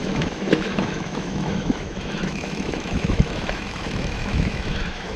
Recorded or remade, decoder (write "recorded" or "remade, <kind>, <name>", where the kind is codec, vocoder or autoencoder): remade, autoencoder, DAC-VAE